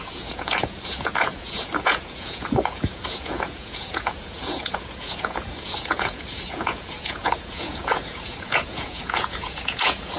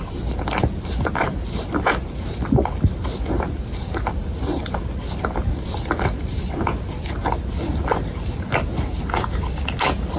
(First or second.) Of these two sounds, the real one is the second